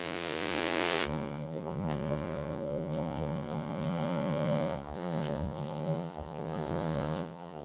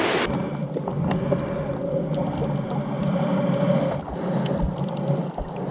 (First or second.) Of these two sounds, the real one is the second